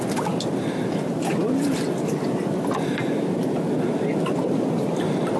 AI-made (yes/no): no